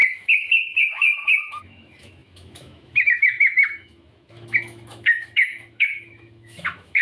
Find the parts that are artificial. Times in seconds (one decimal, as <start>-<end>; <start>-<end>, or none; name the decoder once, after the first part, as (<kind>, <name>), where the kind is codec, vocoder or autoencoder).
0.0-7.0 (autoencoder, DAC-VAE)